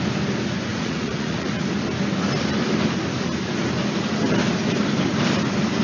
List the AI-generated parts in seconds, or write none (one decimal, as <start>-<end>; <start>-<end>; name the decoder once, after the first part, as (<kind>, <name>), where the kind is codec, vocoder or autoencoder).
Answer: 0.7-1.5 (vocoder, Vocos)